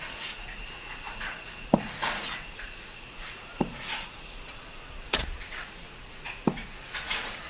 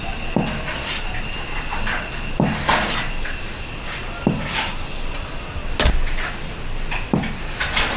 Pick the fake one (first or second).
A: first